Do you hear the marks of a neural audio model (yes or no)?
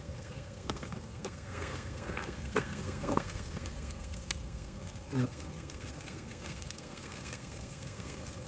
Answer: yes